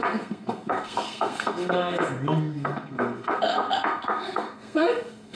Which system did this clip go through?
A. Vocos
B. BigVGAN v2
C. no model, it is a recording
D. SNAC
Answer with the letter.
D